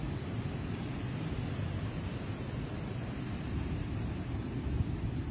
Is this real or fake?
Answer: real